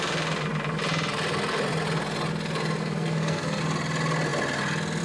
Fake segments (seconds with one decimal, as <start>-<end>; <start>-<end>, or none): 2.8-3.6